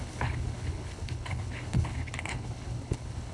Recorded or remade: remade